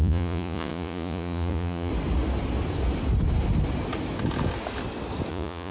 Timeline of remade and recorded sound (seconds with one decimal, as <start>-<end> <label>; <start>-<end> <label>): 0.0-1.9 remade; 1.9-5.3 recorded; 5.3-5.7 remade